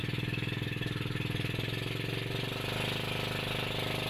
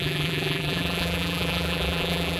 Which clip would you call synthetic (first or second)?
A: second